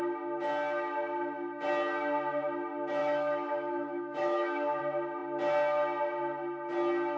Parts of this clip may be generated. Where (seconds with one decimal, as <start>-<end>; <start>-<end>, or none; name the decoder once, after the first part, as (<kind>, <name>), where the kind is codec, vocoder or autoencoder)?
3.0-4.8 (autoencoder, DAC-VAE)